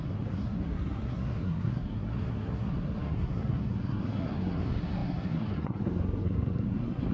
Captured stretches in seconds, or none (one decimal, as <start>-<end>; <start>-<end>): none